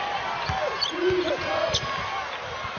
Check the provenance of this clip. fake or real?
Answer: real